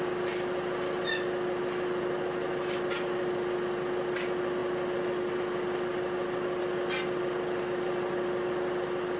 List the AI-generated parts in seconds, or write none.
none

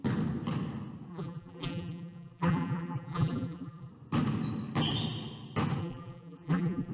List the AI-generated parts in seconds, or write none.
1.1-3.9; 5.8-6.9